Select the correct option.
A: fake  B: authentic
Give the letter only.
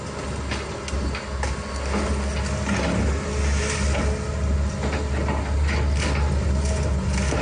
B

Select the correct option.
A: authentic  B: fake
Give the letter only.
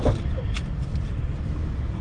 A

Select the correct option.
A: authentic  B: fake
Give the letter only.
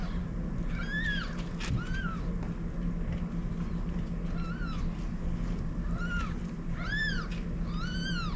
A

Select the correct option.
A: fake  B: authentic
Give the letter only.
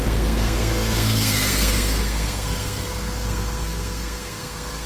A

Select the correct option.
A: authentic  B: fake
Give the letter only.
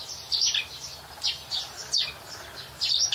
A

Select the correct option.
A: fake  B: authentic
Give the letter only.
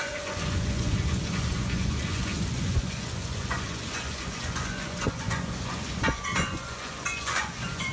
A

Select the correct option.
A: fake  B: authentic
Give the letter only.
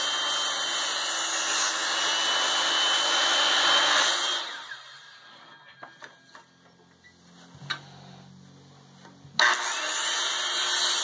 B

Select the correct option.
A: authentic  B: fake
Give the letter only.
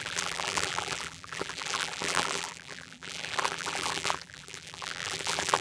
B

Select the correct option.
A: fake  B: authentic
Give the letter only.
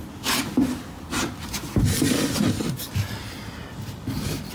B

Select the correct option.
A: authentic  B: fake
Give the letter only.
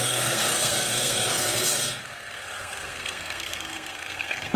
B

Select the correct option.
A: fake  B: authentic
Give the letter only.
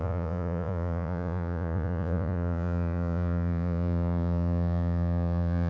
A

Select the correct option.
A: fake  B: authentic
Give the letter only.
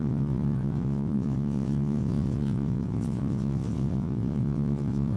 A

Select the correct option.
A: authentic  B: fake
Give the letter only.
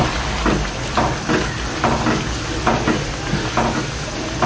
A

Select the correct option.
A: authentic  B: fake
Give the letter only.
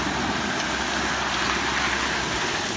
A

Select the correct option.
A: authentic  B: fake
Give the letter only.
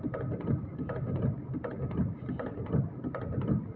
A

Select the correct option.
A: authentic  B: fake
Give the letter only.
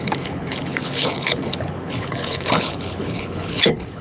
B